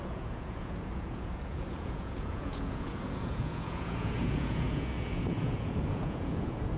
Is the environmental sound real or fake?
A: fake